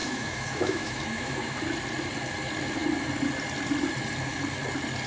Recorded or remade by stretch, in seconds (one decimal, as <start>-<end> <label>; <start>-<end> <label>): 0.0-1.6 remade; 1.6-5.1 recorded